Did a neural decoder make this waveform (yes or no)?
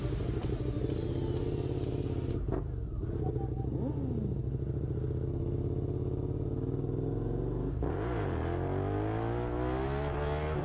no